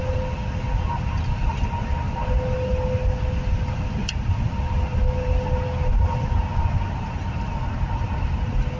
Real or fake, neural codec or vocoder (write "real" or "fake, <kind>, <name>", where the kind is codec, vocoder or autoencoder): real